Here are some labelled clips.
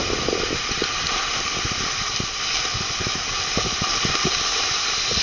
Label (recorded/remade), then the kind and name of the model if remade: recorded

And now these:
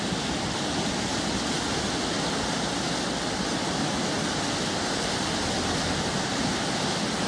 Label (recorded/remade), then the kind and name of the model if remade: recorded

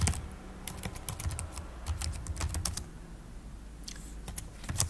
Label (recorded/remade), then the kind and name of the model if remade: recorded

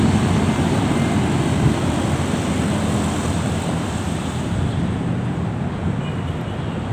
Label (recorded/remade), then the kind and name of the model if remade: recorded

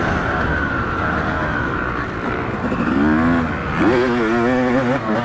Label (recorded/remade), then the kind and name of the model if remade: recorded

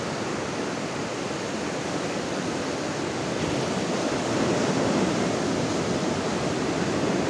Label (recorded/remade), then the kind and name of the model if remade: recorded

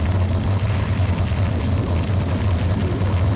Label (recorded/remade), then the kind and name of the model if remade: recorded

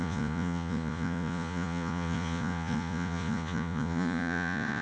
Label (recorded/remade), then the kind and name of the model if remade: remade, vocoder, Vocos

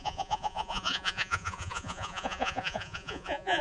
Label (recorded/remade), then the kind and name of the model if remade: remade, vocoder, Vocos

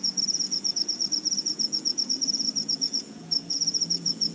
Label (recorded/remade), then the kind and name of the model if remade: remade, vocoder, Vocos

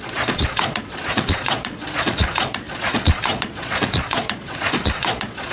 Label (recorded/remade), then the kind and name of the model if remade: remade, vocoder, Vocos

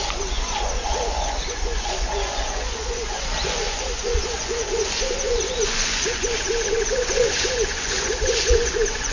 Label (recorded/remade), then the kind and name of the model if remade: remade, vocoder, Vocos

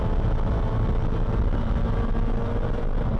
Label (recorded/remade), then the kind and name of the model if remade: recorded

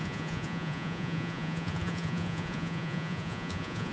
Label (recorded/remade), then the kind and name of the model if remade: remade, vocoder, Vocos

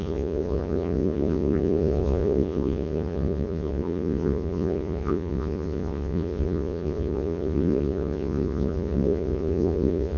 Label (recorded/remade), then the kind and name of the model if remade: remade, vocoder, Vocos